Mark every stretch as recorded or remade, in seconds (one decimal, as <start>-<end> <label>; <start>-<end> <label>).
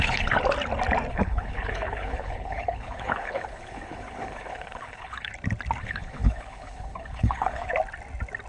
0.0-0.4 remade; 0.4-1.1 recorded; 1.1-5.3 remade; 5.3-5.8 recorded; 5.8-7.7 remade; 7.7-8.5 recorded